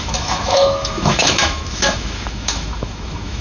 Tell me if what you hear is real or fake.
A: fake